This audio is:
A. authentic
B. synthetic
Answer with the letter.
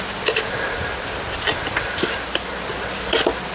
A